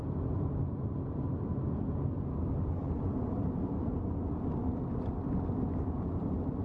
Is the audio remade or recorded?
recorded